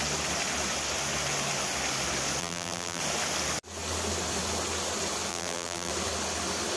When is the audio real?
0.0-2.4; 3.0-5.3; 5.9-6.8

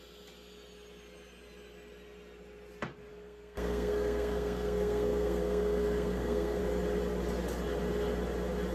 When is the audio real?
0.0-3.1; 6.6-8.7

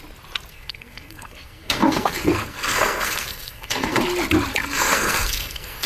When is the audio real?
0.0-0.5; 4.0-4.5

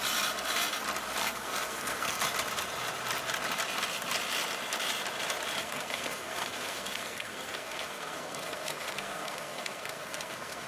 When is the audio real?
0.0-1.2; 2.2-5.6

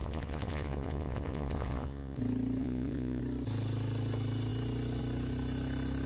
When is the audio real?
2.2-2.6; 3.2-6.1

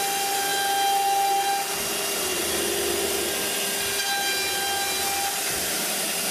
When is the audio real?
0.0-6.3